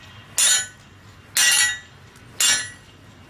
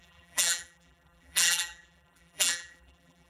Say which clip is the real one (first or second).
first